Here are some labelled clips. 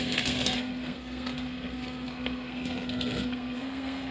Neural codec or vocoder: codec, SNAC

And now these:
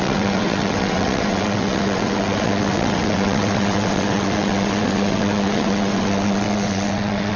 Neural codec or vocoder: vocoder, WaveNeXt